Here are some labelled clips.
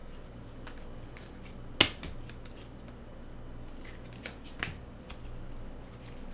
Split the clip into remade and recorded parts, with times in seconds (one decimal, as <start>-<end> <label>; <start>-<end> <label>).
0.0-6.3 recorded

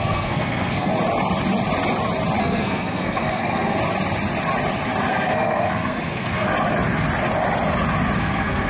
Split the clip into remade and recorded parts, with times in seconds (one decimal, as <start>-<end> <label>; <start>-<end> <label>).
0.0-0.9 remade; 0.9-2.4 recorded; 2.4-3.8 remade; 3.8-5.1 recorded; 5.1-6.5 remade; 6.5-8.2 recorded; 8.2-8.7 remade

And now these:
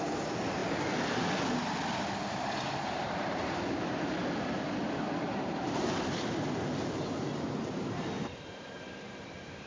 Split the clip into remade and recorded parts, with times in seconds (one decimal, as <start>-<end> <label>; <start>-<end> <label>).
0.0-0.6 remade; 0.6-2.3 recorded; 2.3-4.2 remade; 4.2-5.2 recorded; 5.2-9.7 remade